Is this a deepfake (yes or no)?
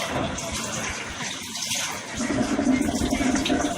no